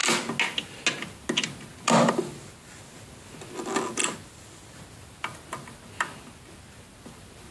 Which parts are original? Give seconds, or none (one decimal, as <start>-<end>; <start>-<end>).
0.0-7.5